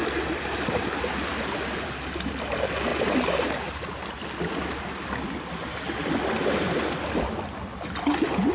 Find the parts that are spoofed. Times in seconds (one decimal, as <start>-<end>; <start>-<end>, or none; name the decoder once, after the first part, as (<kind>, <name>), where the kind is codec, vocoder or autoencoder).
none